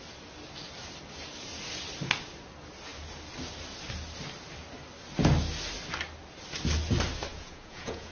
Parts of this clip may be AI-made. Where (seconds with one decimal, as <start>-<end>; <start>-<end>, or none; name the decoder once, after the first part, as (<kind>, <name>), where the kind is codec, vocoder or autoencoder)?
7.3-8.1 (vocoder, Vocos)